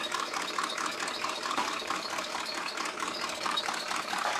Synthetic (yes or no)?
yes